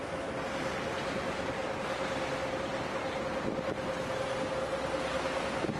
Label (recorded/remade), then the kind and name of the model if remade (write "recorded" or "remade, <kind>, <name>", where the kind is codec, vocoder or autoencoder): recorded